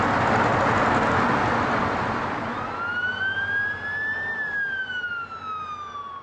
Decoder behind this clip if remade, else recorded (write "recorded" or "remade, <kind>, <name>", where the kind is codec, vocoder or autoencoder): recorded